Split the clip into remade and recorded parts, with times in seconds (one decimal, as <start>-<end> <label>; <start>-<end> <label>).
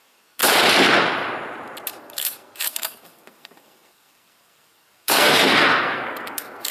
0.0-0.4 remade; 0.4-2.0 recorded; 2.0-6.7 remade